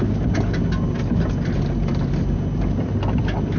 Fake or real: real